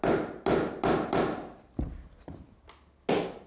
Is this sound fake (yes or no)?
no